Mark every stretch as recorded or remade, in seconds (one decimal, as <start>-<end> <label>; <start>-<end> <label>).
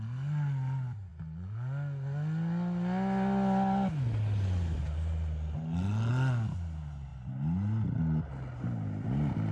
0.0-9.5 recorded